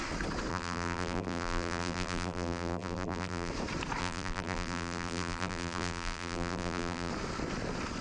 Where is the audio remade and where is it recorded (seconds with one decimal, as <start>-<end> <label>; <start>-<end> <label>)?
0.0-0.5 recorded; 0.5-3.5 remade; 3.5-4.0 recorded; 4.0-7.1 remade; 7.1-8.0 recorded